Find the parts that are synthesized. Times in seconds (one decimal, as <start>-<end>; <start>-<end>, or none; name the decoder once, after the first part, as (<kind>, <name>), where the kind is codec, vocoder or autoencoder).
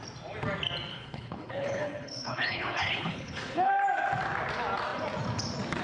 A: 0.9-3.7 (codec, HILCodec)